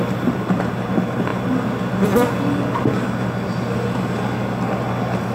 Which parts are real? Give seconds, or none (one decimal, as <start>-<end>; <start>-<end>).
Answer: 0.0-5.3